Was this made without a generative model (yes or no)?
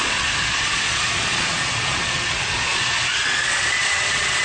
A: no